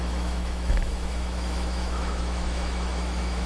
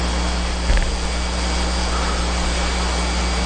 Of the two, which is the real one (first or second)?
second